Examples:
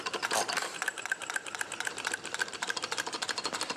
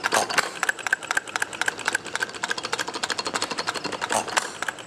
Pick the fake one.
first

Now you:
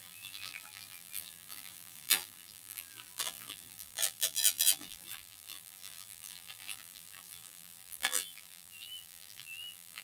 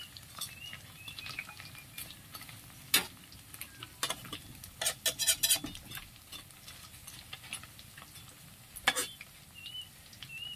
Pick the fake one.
first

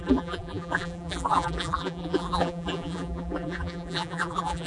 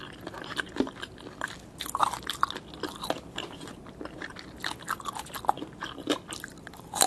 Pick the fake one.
first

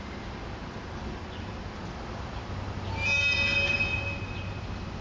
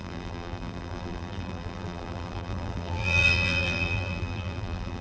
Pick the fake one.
second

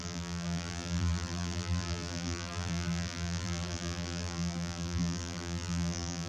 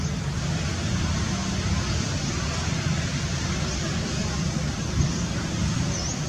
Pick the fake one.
first